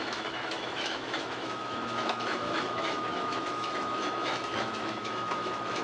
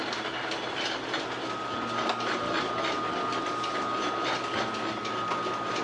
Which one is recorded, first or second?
second